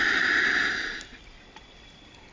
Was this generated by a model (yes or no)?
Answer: no